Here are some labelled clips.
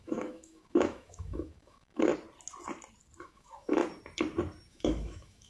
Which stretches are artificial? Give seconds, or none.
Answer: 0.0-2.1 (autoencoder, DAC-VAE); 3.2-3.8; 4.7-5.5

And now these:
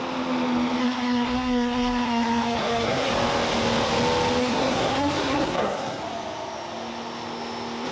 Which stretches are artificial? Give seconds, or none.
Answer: 0.8-3.1 (codec, SNAC); 4.4-6.0

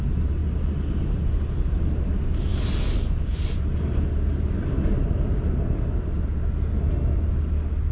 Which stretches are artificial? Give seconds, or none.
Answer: none

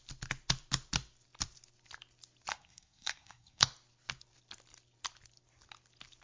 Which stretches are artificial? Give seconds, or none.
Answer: 2.5-3.6 (codec, SNAC)

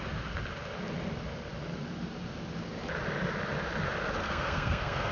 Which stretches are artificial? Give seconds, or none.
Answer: 4.2-5.1 (codec, SNAC)